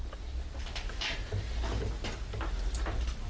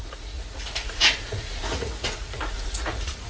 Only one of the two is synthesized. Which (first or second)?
second